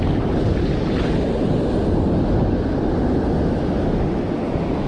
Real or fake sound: real